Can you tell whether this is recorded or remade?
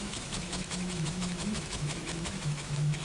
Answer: remade